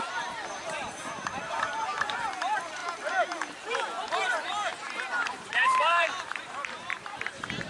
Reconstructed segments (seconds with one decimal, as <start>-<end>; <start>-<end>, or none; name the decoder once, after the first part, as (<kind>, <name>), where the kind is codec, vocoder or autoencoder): 0.0-2.8 (vocoder, BigVGAN v2); 4.1-7.7